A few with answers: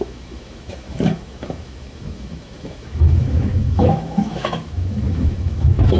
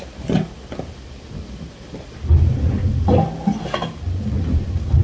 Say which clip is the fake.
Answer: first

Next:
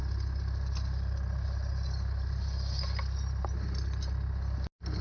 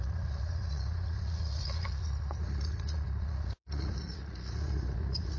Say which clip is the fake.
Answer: second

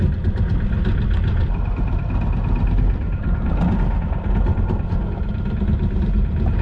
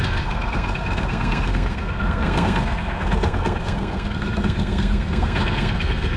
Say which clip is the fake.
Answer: second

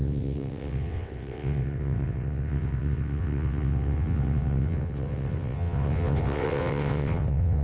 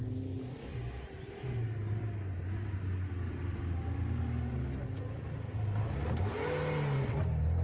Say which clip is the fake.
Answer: first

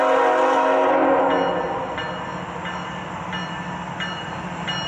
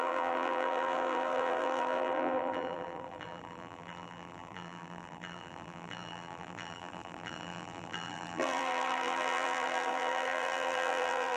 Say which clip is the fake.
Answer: second